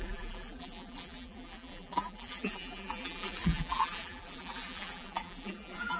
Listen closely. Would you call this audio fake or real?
fake